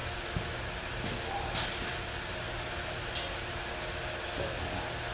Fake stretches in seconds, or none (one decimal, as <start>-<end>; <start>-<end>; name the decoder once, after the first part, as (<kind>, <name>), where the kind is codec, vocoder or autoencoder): 0.0-3.1 (vocoder, BigVGAN v2)